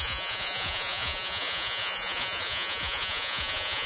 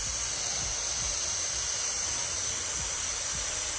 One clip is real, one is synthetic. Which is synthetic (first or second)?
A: first